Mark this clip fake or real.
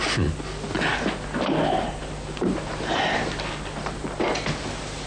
real